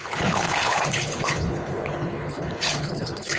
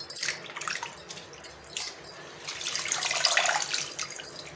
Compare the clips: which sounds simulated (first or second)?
first